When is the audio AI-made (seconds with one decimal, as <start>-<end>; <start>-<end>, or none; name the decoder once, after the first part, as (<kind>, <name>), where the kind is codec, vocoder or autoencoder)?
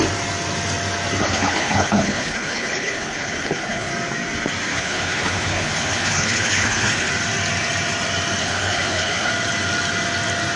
1.2-3.9 (codec, HILCodec); 4.7-7.1; 8.4-9.3